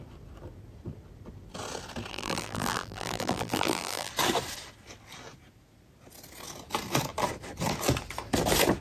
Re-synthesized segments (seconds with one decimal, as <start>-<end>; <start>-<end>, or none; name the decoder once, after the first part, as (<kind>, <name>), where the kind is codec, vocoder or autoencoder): 2.1-4.1 (vocoder, BigVGAN v2)